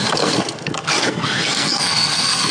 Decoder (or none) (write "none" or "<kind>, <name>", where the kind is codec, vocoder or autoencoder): codec, SNAC